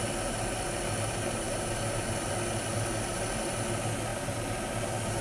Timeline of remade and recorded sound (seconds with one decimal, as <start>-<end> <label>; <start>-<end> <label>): 0.0-5.2 recorded